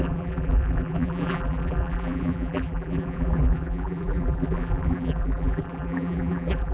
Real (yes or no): no